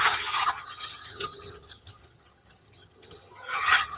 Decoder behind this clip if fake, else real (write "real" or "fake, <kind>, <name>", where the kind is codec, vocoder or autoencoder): fake, vocoder, HiFi-GAN